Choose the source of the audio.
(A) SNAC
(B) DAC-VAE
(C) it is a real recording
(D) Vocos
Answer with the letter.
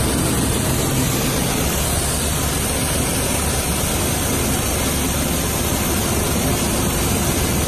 C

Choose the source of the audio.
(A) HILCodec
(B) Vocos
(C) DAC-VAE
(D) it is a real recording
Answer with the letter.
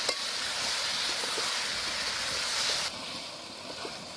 D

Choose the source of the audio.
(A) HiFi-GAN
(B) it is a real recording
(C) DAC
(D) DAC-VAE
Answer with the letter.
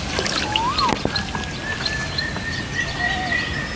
B